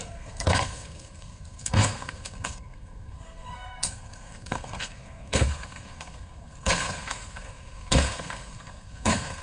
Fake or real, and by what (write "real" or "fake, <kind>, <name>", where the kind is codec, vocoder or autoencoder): fake, codec, SNAC